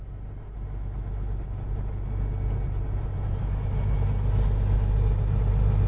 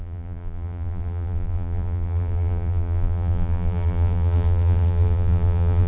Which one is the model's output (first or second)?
second